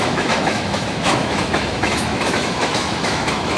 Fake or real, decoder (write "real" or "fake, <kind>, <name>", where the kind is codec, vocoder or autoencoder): fake, autoencoder, DAC-VAE